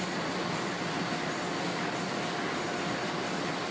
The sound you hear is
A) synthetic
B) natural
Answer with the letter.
B